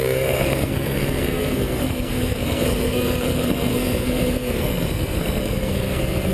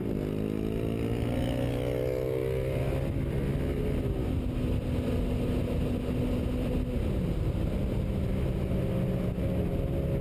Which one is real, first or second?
second